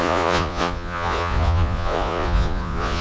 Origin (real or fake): fake